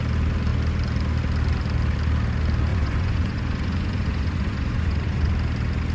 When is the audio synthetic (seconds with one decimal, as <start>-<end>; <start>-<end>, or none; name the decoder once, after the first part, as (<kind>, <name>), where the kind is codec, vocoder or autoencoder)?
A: 2.7-5.3 (vocoder, Vocos)